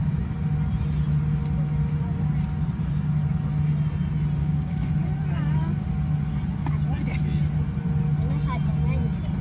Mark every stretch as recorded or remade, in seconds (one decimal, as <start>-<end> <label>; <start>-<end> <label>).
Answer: 0.0-4.4 recorded; 4.4-4.9 remade; 4.9-9.4 recorded